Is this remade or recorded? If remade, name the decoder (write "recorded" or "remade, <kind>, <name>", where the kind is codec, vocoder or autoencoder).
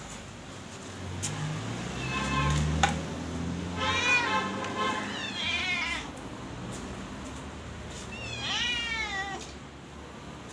recorded